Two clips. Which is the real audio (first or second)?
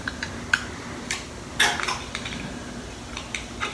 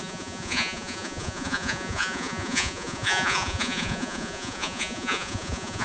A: first